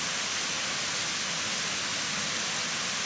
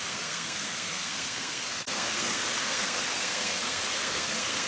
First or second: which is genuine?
first